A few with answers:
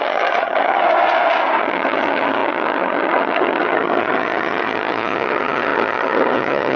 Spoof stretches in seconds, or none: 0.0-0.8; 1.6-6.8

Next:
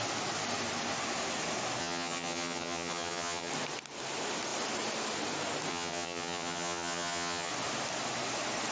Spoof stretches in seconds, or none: 1.8-3.5; 5.7-7.5